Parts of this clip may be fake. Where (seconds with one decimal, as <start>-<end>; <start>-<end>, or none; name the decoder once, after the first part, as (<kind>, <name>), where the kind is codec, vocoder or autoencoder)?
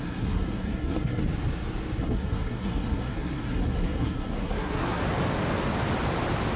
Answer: 0.0-1.2 (codec, SNAC); 2.0-5.0